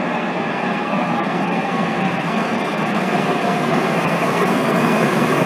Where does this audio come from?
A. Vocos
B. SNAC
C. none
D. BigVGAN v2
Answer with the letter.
B